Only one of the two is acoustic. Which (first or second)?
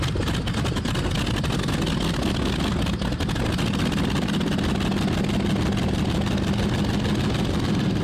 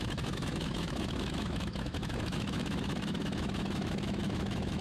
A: first